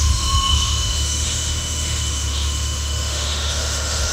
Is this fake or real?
fake